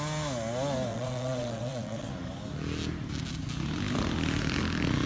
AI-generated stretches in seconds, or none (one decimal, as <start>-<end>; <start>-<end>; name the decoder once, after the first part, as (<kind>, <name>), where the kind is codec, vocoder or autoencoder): 0.9-2.1 (vocoder, WaveNeXt)